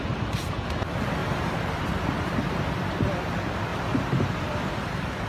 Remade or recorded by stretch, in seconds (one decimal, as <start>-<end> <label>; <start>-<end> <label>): 0.0-1.2 recorded; 1.2-1.8 remade; 1.8-3.7 recorded; 3.7-4.7 remade; 4.7-5.3 recorded